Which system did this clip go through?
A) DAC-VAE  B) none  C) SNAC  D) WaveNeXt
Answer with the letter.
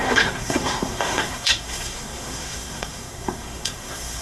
C